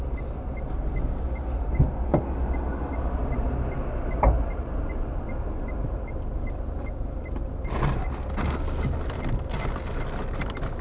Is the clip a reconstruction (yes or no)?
no